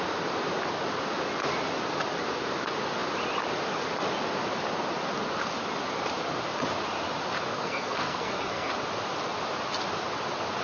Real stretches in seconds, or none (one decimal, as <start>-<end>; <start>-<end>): 0.0-7.5; 8.7-10.6